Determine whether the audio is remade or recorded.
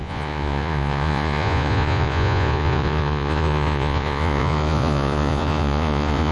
remade